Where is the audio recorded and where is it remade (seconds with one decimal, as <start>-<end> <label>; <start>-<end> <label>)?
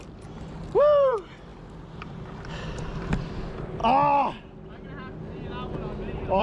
0.0-1.5 remade; 1.5-2.1 recorded; 2.1-3.8 remade; 3.8-6.4 recorded